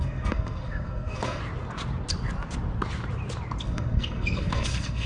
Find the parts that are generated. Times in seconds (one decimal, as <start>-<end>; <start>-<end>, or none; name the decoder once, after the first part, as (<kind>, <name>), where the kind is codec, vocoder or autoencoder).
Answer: 0.0-1.4 (codec, SNAC); 3.6-5.1